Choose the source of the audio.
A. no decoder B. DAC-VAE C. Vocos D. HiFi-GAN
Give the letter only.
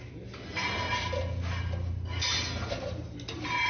A